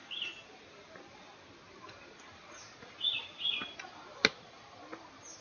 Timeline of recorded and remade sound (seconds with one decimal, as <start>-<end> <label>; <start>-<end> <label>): 0.0-5.4 recorded